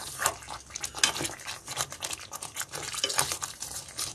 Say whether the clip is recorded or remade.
recorded